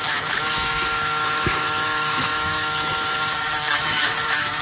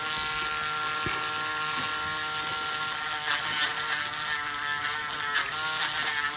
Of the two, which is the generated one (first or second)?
first